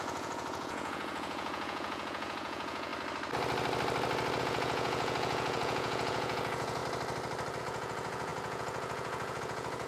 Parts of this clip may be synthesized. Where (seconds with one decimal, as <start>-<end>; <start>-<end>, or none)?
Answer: 0.0-2.9; 4.4-6.8; 7.6-9.9